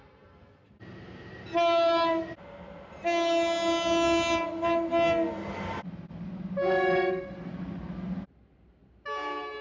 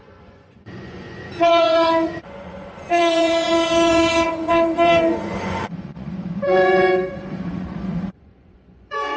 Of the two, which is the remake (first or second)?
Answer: second